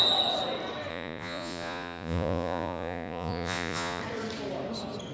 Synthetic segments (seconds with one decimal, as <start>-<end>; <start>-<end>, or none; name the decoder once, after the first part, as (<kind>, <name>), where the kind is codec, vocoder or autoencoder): 0.9-4.0 (vocoder, Vocos)